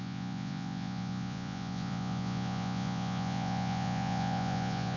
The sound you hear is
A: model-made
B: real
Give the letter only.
A